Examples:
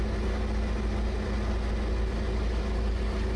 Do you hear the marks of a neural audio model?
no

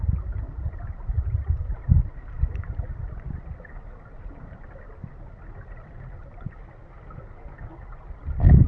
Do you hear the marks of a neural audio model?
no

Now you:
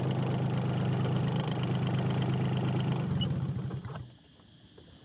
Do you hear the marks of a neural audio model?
no